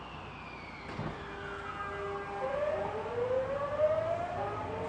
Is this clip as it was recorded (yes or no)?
yes